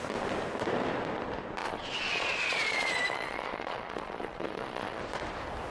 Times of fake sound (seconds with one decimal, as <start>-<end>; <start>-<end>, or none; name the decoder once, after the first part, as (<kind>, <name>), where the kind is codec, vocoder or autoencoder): 1.6-5.0 (vocoder, Vocos)